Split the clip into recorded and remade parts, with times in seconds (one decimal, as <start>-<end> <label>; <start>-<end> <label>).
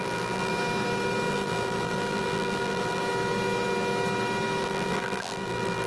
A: 0.0-0.5 remade; 0.5-1.3 recorded; 1.3-3.0 remade; 3.0-4.6 recorded; 4.6-5.9 remade